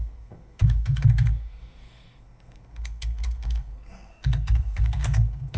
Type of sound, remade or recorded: remade